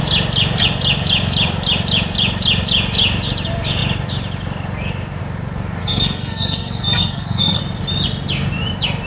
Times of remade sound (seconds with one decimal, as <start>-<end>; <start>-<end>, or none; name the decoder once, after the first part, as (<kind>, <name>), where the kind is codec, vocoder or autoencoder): 5.8-7.6 (codec, SNAC)

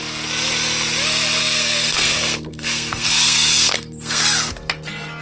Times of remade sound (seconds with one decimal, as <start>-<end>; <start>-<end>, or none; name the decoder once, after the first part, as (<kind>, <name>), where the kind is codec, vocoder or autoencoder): 1.4-4.5 (codec, SNAC)

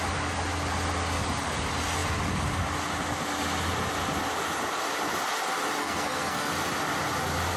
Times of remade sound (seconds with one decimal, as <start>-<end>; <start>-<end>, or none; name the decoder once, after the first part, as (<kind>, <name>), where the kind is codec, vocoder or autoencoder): 5.8-6.5 (codec, SNAC)

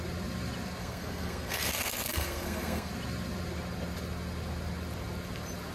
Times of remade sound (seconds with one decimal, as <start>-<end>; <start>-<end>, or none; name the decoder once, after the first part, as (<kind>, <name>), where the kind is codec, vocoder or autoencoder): 0.8-2.9 (codec, SNAC)

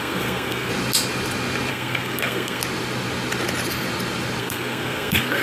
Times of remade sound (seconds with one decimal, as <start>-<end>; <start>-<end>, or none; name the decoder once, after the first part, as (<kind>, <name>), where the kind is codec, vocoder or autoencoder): 0.0-0.7 (codec, SNAC); 1.7-2.6; 4.4-5.4

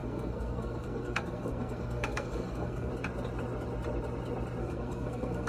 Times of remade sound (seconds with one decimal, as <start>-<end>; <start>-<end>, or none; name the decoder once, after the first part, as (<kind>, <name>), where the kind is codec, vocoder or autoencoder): 0.0-2.9 (codec, SNAC); 4.6-5.5

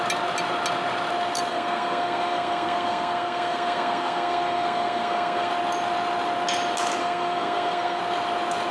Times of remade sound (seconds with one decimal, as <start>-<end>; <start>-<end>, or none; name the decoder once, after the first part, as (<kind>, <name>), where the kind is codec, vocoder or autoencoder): 1.5-5.5 (codec, SNAC); 7.0-8.0

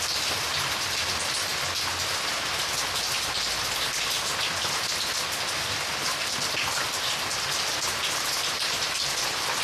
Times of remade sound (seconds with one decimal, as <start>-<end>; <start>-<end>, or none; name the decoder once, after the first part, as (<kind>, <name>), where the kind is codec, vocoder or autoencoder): none